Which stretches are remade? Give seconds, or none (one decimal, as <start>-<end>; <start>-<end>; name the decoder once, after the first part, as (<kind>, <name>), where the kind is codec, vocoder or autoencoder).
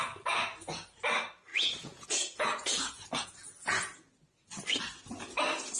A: 1.5-4.1 (vocoder, Vocos)